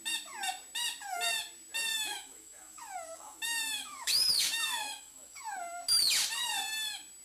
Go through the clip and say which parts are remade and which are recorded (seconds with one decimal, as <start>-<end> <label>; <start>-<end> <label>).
0.0-1.9 recorded; 1.9-5.4 remade; 5.4-7.2 recorded